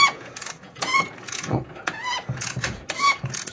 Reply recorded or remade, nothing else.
remade